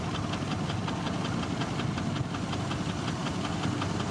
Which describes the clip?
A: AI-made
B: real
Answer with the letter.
B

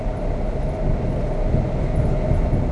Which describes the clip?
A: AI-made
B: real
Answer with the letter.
B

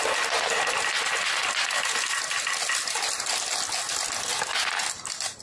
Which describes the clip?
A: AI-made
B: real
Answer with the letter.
B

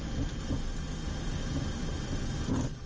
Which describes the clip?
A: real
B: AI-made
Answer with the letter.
A